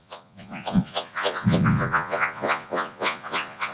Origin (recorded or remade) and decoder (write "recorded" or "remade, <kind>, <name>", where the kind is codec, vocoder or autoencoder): remade, vocoder, Vocos